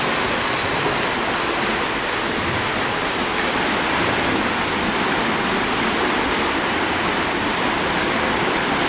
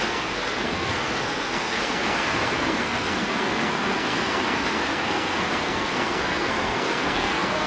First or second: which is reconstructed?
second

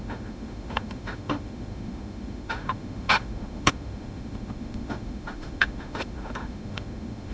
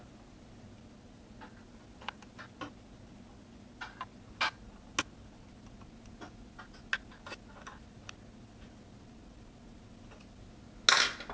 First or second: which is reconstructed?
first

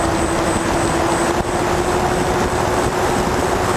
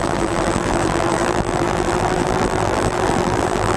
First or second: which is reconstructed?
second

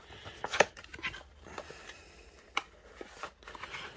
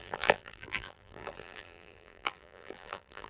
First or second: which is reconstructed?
second